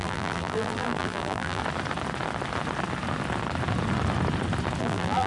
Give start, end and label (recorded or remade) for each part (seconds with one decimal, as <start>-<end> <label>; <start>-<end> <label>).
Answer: 0.0-1.6 remade; 1.6-4.8 recorded; 4.8-5.3 remade

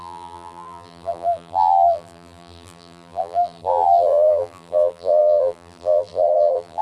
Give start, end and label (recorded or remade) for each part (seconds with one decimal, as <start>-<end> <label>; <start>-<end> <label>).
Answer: 0.0-6.8 remade

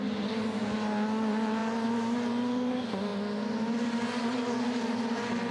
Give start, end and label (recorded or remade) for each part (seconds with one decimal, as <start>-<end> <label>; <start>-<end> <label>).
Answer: 0.0-1.6 recorded; 1.6-2.7 remade; 2.7-5.5 recorded